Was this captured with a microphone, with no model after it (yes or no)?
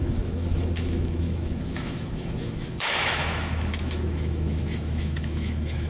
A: no